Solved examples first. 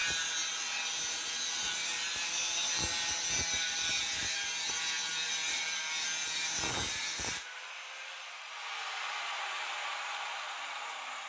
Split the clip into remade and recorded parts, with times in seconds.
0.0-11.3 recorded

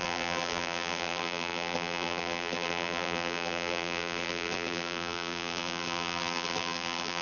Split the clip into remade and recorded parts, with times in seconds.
0.0-7.2 remade

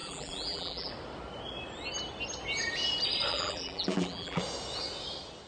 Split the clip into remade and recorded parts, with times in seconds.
0.0-0.9 remade; 0.9-3.3 recorded; 3.3-4.4 remade; 4.4-5.5 recorded

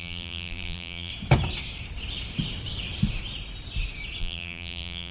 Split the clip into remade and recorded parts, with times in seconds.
0.0-1.1 remade; 1.1-4.2 recorded; 4.2-5.1 remade

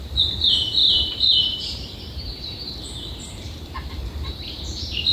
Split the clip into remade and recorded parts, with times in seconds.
0.0-5.1 remade

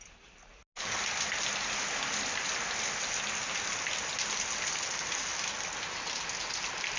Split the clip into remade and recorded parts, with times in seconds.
0.0-0.6 remade; 0.6-4.8 recorded; 4.8-5.3 remade; 5.3-6.6 recorded; 6.6-7.0 remade